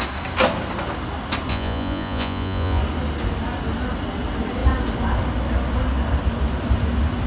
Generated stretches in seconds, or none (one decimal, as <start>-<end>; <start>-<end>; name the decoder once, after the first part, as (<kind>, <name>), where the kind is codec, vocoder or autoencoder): 1.5-2.8 (vocoder, Vocos)